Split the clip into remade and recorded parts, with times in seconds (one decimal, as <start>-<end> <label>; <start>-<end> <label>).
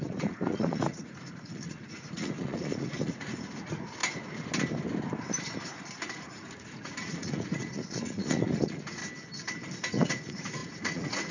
0.0-4.0 remade; 4.0-6.1 recorded; 6.1-9.0 remade; 9.0-9.9 recorded; 9.9-11.3 remade